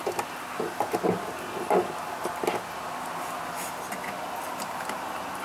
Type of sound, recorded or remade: recorded